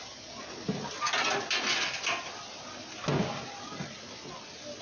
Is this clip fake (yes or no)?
no